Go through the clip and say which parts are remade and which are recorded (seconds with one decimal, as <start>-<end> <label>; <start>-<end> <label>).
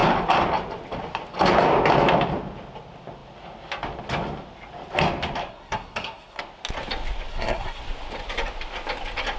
0.0-5.5 recorded; 5.5-6.4 remade; 6.4-7.3 recorded; 7.3-7.8 remade; 7.8-9.4 recorded